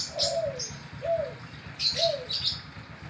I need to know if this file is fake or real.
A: real